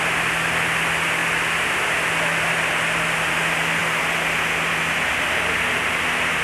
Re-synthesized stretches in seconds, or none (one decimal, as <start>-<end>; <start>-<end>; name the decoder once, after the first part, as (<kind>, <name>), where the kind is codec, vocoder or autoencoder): none